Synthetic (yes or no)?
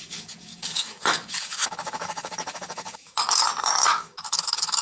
yes